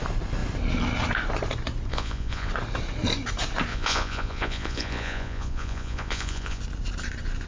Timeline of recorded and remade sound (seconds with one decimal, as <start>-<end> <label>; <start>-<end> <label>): 0.0-1.9 recorded; 1.9-2.5 remade; 2.5-3.7 recorded; 3.7-6.6 remade; 6.6-7.5 recorded